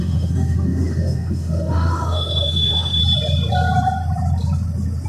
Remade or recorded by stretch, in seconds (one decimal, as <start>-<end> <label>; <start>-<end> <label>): 0.0-3.0 remade; 3.0-5.1 recorded